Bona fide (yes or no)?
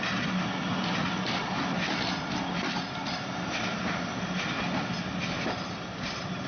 yes